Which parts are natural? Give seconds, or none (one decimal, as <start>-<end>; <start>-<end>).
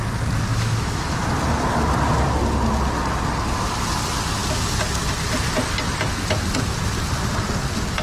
0.0-0.5; 1.2-8.0